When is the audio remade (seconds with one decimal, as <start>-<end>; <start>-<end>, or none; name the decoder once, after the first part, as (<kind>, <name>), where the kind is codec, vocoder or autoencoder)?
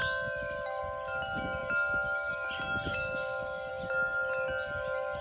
2.9-3.7 (codec, DAC)